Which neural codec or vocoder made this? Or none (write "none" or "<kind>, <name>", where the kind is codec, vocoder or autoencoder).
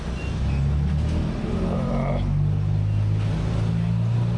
none